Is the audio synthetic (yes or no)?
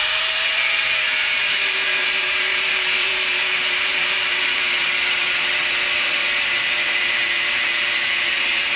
yes